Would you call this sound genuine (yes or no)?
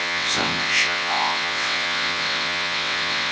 no